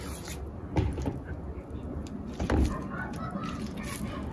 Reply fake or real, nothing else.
real